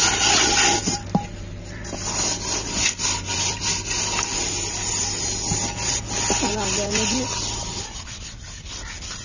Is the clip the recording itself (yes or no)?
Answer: yes